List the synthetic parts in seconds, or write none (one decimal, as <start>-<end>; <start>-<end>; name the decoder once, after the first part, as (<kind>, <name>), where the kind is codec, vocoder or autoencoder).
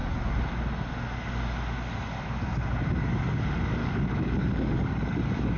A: 3.8-5.6 (codec, DAC)